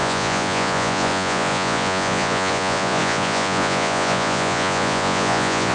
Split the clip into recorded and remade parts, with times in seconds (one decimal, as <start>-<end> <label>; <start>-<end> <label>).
0.0-5.7 remade